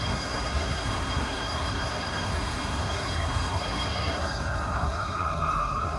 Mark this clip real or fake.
fake